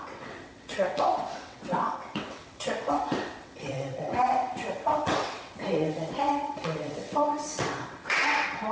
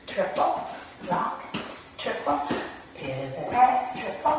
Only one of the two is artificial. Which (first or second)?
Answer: first